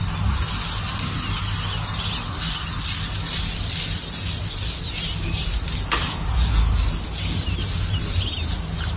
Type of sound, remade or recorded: recorded